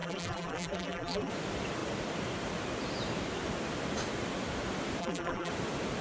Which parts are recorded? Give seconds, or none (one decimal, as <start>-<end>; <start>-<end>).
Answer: 1.3-5.0; 5.5-6.0